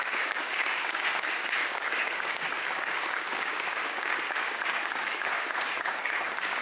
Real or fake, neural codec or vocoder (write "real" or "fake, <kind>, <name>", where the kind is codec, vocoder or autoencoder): fake, codec, DAC